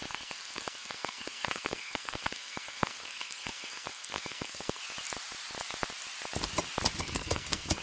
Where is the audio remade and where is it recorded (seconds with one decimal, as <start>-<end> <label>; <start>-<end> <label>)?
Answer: 0.0-4.8 remade; 4.8-7.0 recorded; 7.0-7.8 remade